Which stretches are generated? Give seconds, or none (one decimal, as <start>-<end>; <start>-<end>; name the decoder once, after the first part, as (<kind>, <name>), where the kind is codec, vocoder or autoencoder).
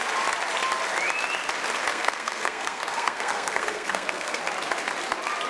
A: 1.9-4.4 (codec, SNAC)